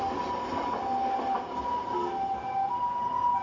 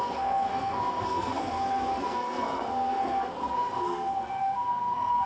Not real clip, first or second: second